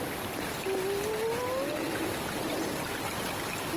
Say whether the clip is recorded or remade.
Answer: recorded